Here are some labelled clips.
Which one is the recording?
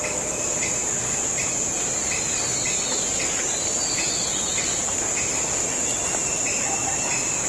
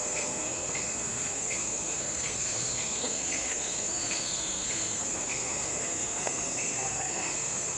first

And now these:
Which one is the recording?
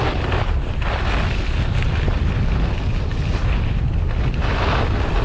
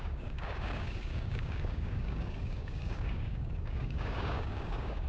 first